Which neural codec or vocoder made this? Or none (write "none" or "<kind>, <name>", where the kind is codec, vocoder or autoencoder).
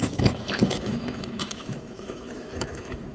autoencoder, DAC-VAE